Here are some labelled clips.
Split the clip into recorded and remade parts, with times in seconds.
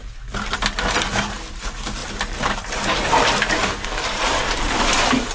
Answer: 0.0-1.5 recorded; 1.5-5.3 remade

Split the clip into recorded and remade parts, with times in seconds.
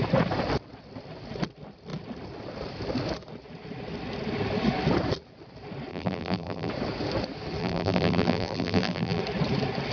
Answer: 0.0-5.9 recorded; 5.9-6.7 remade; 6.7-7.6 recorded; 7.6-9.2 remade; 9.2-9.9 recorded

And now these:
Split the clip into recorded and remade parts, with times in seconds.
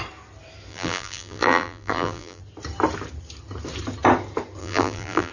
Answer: 0.0-0.7 recorded; 0.7-2.4 remade; 2.4-4.6 recorded; 4.6-5.3 remade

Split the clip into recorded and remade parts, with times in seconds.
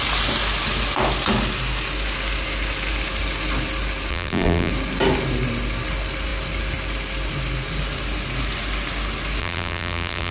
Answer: 0.0-4.1 recorded; 4.1-4.7 remade; 4.7-9.4 recorded; 9.4-10.3 remade